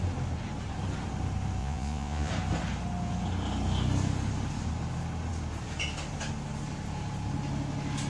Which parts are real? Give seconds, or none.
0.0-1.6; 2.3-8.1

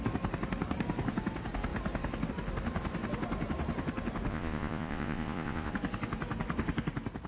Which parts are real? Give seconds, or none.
0.0-4.3; 5.7-7.3

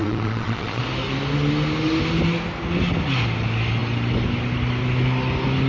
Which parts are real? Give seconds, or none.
0.8-5.7

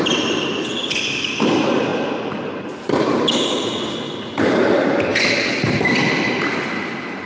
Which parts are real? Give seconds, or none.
0.0-7.3

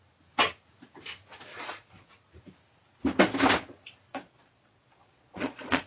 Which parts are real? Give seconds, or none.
0.0-1.5; 2.1-4.1